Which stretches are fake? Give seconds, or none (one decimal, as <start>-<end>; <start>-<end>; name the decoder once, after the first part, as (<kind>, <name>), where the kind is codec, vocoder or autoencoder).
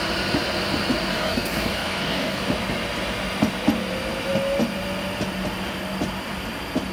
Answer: 1.1-2.4 (codec, DAC)